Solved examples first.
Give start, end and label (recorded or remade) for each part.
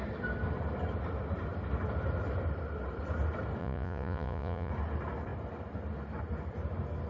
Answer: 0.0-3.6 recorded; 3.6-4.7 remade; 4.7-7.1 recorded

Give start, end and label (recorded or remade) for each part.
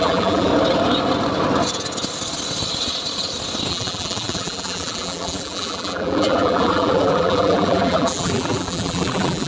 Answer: 0.0-0.5 remade; 0.5-3.7 recorded; 3.7-9.5 remade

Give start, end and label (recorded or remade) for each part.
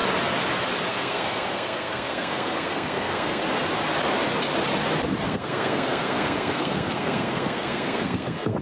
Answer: 0.0-0.9 recorded; 0.9-3.4 remade; 3.4-5.2 recorded; 5.2-8.6 remade